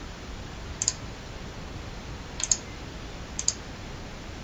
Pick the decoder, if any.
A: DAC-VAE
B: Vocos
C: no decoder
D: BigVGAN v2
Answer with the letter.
D